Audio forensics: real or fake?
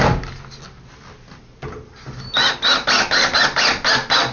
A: real